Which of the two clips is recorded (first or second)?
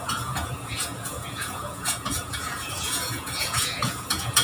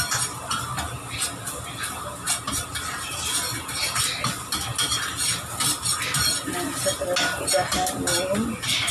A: second